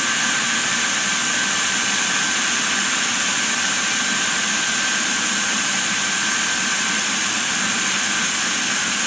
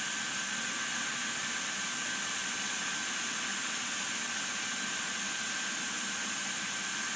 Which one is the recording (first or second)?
second